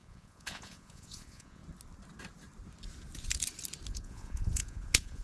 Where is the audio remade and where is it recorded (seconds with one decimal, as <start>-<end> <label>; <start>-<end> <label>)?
0.0-1.6 remade; 1.6-3.9 recorded; 3.9-5.2 remade